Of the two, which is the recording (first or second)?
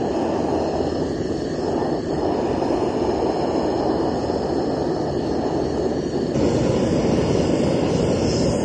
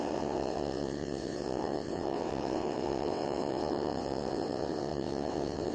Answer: first